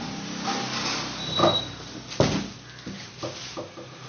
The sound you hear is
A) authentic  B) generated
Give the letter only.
A